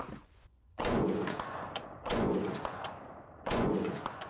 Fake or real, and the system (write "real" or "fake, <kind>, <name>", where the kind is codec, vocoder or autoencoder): fake, vocoder, Vocos